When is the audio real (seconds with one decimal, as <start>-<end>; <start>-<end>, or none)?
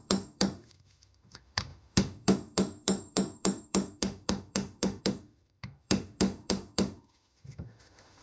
none